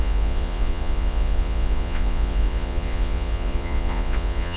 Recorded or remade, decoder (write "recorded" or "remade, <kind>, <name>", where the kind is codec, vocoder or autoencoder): remade, vocoder, Vocos